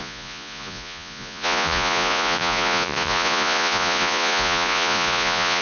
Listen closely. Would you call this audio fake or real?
fake